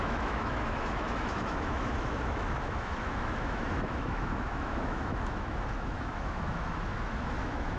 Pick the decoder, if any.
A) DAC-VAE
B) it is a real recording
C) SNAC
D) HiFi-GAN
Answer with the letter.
A